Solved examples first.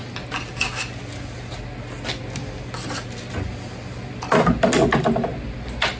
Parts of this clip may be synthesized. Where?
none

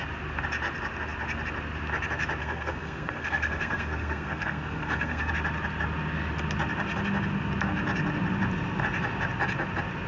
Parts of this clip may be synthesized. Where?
2.4-5.3 (codec, SNAC)

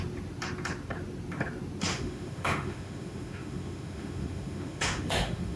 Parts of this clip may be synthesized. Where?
1.9-5.6 (autoencoder, DAC-VAE)